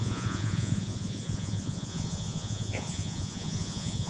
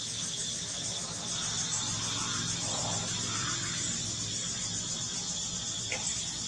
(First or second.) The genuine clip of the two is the second